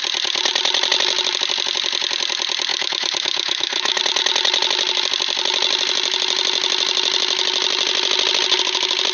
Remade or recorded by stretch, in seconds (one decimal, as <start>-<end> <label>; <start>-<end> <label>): 0.0-2.7 recorded; 2.7-4.0 remade; 4.0-9.1 recorded